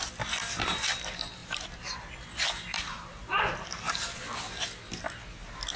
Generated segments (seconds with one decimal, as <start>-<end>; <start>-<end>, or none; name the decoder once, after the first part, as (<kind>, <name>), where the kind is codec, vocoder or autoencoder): 1.4-2.1 (vocoder, BigVGAN v2); 2.7-4.4

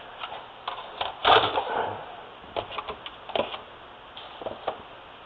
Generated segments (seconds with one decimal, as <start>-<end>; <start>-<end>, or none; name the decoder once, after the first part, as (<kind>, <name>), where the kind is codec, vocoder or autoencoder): none

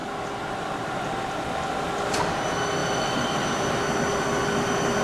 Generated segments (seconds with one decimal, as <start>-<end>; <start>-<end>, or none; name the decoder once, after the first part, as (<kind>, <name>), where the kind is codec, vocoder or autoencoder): 2.8-5.0 (vocoder, BigVGAN v2)

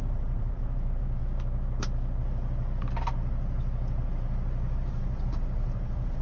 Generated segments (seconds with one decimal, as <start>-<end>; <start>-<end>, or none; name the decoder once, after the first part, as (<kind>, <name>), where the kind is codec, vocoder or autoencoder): 0.0-1.2 (vocoder, BigVGAN v2); 4.9-6.2

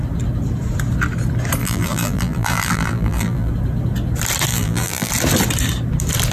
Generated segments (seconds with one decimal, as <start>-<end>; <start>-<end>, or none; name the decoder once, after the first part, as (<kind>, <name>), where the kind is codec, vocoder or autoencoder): 1.6-3.5 (vocoder, BigVGAN v2); 4.5-5.1

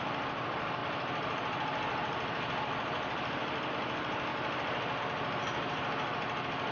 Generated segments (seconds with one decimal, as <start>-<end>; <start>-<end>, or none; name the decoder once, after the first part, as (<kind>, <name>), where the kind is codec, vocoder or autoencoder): 0.8-3.7 (vocoder, BigVGAN v2); 4.3-5.0

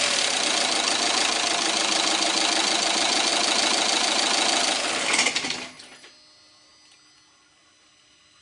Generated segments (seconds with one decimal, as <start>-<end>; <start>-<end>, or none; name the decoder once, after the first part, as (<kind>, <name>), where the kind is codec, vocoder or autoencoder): none